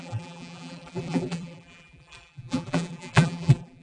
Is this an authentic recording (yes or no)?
no